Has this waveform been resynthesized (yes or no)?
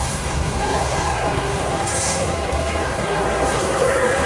yes